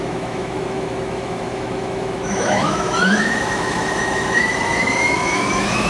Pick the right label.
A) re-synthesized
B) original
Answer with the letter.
A